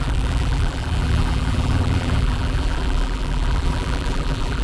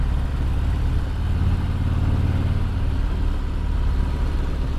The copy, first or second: first